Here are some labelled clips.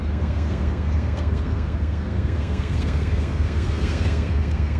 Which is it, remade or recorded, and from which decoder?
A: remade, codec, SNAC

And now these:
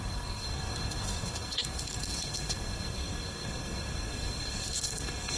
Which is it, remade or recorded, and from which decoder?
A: remade, codec, SNAC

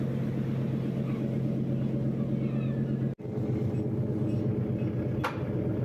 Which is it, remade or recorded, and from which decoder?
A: recorded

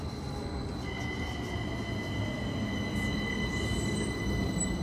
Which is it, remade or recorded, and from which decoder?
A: recorded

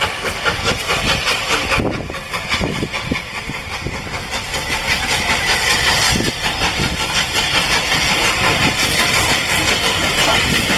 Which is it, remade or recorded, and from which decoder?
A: recorded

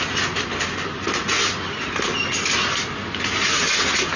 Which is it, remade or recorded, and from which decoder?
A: recorded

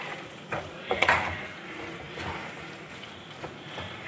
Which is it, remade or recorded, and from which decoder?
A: remade, vocoder, Vocos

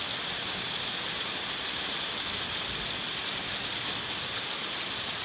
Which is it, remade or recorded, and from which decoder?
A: recorded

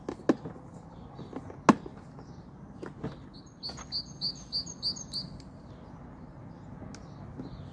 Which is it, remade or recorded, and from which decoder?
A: recorded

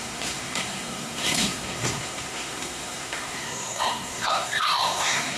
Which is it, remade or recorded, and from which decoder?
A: remade, codec, SNAC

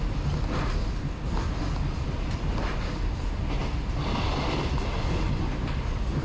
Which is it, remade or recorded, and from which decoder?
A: recorded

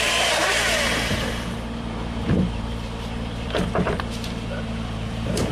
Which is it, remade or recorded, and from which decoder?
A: remade, vocoder, BigVGAN v2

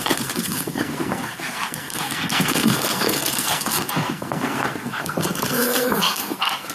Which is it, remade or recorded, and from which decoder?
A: remade, codec, SNAC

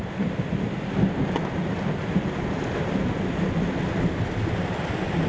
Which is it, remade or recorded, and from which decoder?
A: recorded